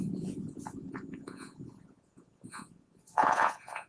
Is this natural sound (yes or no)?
no